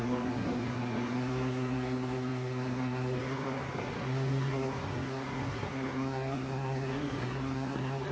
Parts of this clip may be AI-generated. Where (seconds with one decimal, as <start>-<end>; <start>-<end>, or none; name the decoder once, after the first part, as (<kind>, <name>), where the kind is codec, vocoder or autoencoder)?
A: 0.0-8.1 (codec, SNAC)